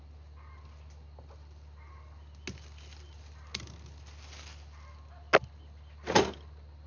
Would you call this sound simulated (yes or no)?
no